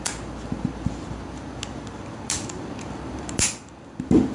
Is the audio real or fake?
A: real